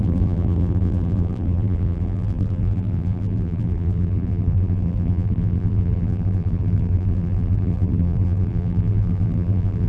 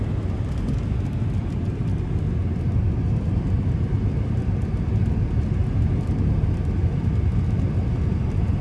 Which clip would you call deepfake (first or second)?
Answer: first